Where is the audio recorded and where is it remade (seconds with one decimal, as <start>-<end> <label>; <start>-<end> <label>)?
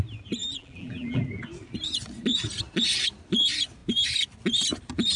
0.0-0.4 recorded; 0.4-1.2 remade; 1.2-5.2 recorded